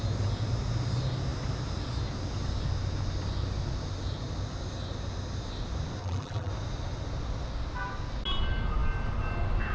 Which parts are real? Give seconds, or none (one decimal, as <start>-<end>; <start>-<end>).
0.0-6.0; 6.5-9.7